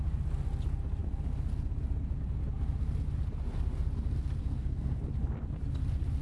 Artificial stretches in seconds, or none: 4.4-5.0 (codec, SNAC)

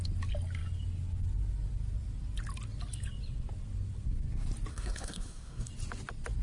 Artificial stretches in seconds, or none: 4.7-5.7 (codec, SNAC)

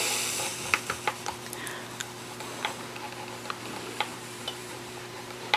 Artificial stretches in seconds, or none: 4.1-5.6 (vocoder, BigVGAN v2)

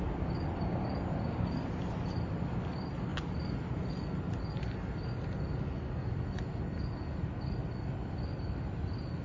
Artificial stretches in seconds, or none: none

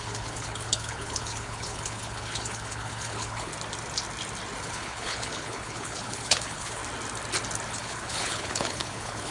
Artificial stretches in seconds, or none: 0.0-3.5 (codec, HILCodec); 4.6-6.8; 7.7-9.3